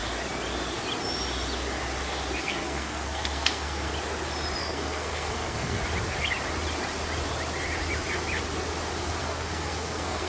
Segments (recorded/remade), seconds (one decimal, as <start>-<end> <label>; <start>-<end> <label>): 0.0-2.4 recorded; 2.4-3.9 remade; 3.9-4.6 recorded; 4.6-5.8 remade; 5.8-9.2 recorded; 9.2-10.3 remade